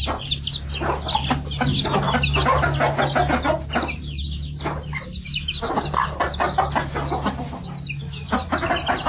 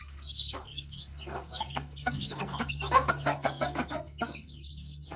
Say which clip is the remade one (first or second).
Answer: second